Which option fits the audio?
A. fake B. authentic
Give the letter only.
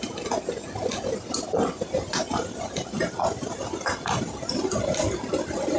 B